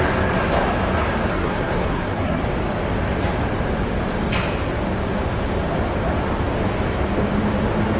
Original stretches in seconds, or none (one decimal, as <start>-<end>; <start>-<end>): 0.0-1.3; 2.4-8.0